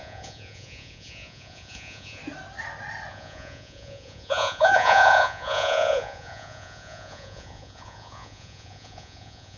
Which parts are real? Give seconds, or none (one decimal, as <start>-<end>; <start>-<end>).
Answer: 2.2-3.1

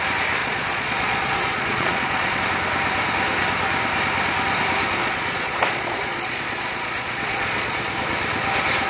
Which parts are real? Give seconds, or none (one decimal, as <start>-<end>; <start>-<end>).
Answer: 0.0-0.4; 2.4-5.0; 7.9-8.9

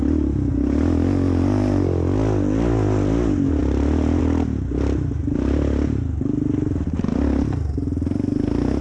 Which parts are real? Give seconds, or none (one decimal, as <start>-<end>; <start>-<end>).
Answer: 0.0-8.8

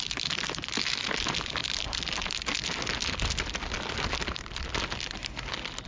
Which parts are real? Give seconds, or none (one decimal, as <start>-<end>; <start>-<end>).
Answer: 0.0-5.9

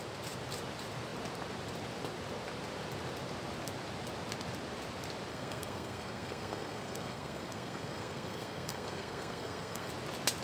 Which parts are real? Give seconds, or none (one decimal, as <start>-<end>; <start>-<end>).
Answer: 0.0-5.3; 9.9-10.4

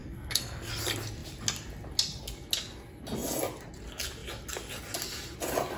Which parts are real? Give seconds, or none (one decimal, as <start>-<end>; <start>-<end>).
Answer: 0.7-5.8